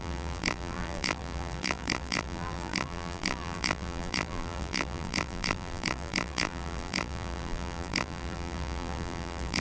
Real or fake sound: fake